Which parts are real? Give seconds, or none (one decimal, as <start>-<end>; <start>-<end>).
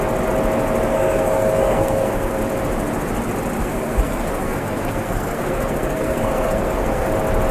0.0-0.9; 2.4-3.6; 7.1-7.5